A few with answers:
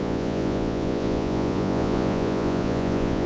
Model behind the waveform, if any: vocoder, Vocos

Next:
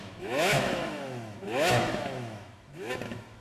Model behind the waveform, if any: autoencoder, DAC-VAE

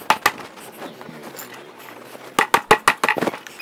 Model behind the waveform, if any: none